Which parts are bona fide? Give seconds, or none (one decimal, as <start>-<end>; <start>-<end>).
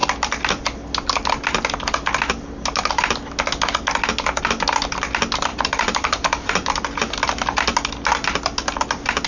0.0-5.5; 6.7-9.3